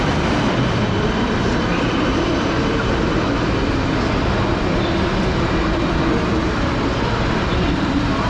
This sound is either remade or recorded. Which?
remade